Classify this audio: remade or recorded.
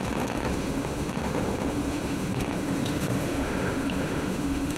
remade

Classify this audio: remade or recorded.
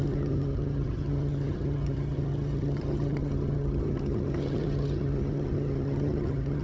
remade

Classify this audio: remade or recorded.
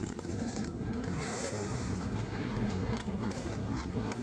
remade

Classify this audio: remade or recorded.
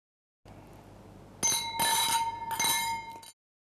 recorded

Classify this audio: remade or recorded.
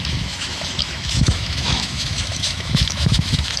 remade